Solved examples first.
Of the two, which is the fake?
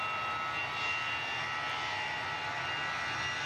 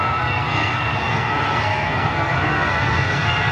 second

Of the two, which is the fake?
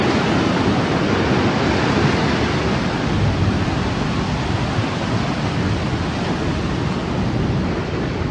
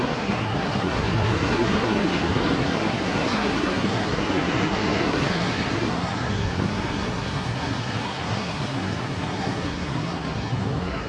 second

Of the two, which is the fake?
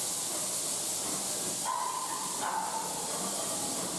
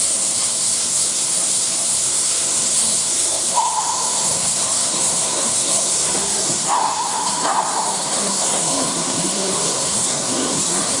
second